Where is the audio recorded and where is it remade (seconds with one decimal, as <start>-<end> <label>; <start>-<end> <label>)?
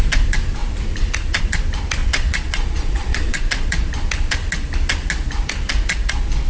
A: 0.0-2.0 recorded; 2.0-3.4 remade; 3.4-6.5 recorded